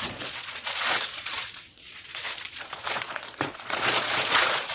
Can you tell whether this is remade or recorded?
remade